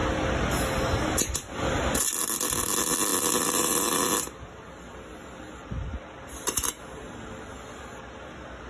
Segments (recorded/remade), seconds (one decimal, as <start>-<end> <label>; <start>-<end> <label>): 0.0-8.7 recorded